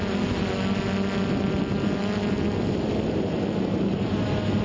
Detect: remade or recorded recorded